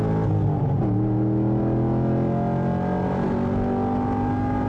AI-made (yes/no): no